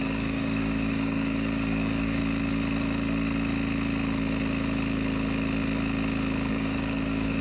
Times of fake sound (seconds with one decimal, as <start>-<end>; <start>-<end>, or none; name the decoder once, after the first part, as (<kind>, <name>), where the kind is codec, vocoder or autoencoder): 0.0-2.2 (codec, DAC); 6.5-7.4